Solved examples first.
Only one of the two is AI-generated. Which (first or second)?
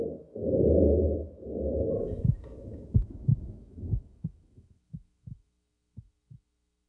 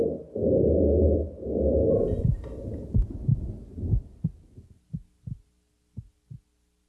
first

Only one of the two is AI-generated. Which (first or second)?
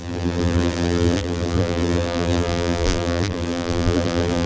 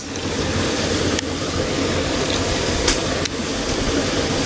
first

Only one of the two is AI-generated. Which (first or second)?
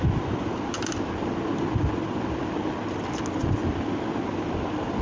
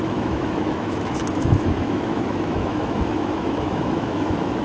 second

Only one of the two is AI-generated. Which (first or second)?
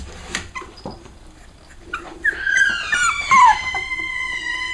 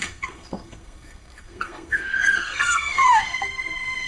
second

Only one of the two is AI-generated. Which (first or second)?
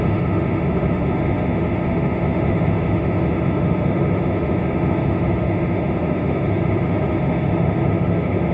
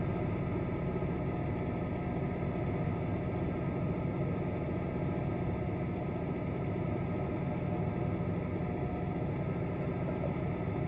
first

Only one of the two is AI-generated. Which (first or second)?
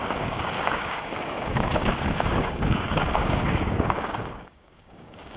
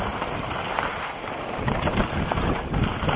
first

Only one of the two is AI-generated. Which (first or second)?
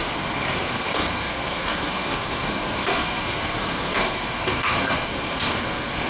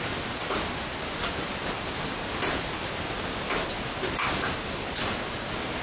first